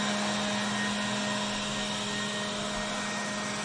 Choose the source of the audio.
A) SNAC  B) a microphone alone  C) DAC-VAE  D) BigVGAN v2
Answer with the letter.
B